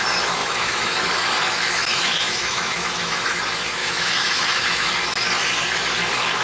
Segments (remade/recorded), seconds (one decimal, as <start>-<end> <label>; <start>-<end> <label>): 0.0-0.4 recorded; 0.4-1.3 remade; 1.3-1.8 recorded; 1.8-3.4 remade; 3.4-3.8 recorded; 3.8-4.9 remade; 4.9-6.4 recorded